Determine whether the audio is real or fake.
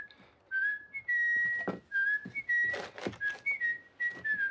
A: real